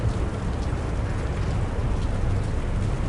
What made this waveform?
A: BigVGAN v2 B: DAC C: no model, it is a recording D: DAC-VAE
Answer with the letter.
C